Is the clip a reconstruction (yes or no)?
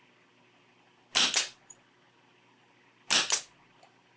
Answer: no